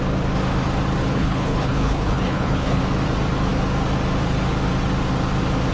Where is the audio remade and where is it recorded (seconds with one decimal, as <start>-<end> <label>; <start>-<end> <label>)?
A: 0.0-1.1 recorded; 1.1-2.8 remade; 2.8-5.7 recorded